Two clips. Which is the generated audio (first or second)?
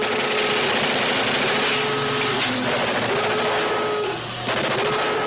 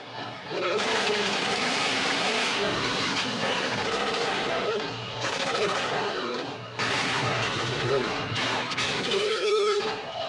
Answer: second